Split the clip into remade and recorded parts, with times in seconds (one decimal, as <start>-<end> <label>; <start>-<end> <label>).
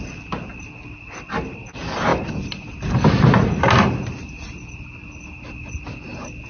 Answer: 0.0-6.5 recorded